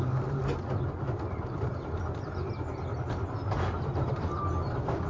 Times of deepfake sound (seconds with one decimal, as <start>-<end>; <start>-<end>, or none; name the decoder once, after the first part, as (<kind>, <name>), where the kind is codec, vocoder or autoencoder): none

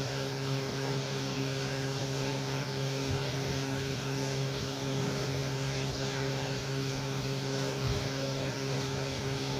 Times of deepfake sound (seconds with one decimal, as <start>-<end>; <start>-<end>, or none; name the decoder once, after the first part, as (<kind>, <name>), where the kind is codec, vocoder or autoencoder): 0.0-9.6 (codec, DAC)

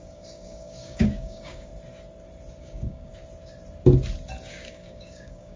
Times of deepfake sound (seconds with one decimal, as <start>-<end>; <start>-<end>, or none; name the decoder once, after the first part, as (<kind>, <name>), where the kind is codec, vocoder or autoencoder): 0.0-1.7 (codec, DAC); 2.6-3.1; 4.5-5.6

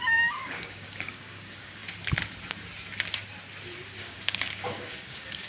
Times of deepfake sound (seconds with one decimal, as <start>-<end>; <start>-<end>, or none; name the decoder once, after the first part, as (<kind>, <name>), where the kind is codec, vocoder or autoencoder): 0.0-1.8 (codec, DAC); 4.0-5.5

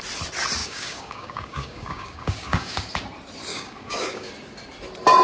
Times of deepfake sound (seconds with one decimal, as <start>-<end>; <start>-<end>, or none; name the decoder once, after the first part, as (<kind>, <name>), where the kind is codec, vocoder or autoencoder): 0.6-2.9 (codec, DAC); 3.5-4.3